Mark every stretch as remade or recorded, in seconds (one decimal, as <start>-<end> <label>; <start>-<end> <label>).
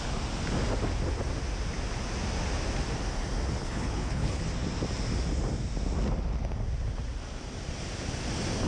0.0-3.6 recorded; 3.6-4.4 remade; 4.4-8.7 recorded